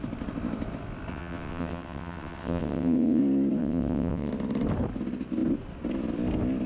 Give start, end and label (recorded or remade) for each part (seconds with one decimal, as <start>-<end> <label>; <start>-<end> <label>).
0.0-1.1 recorded; 1.1-3.2 remade; 3.2-3.6 recorded; 3.6-4.3 remade; 4.3-6.7 recorded